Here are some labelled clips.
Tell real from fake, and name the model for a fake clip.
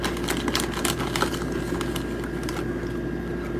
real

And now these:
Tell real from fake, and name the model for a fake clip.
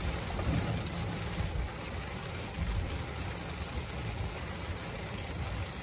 real